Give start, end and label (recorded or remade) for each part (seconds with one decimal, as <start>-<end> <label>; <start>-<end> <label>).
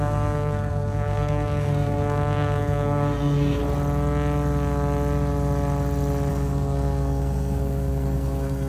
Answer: 0.0-3.6 remade; 3.6-6.3 recorded; 6.3-8.7 remade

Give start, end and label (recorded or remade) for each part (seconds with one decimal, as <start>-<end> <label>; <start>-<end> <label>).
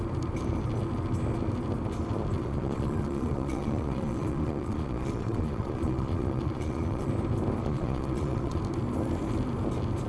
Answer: 0.0-2.4 recorded; 2.4-7.1 remade; 7.1-7.6 recorded; 7.6-8.6 remade; 8.6-10.1 recorded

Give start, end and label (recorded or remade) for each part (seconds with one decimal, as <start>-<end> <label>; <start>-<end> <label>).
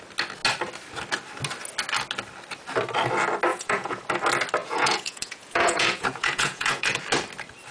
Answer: 0.0-3.5 recorded; 3.5-4.0 remade; 4.0-4.6 recorded; 4.6-7.0 remade; 7.0-7.7 recorded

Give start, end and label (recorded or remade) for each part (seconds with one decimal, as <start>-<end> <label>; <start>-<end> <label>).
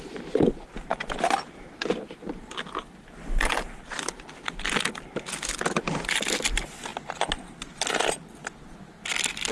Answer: 0.0-9.5 recorded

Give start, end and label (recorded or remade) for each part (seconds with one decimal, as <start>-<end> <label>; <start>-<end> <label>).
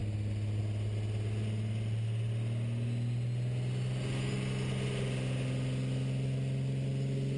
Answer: 0.0-7.4 recorded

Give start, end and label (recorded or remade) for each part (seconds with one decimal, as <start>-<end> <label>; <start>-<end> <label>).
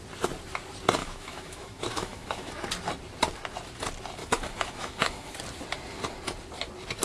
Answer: 0.0-1.0 recorded; 1.0-2.5 remade; 2.5-4.2 recorded; 4.2-5.3 remade; 5.3-7.0 recorded